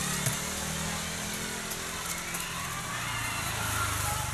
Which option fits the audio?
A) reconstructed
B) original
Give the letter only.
B